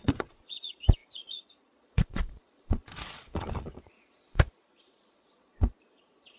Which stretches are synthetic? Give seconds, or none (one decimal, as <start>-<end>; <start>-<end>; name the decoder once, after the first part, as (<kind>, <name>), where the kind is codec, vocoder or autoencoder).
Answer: 0.0-6.4 (vocoder, Vocos)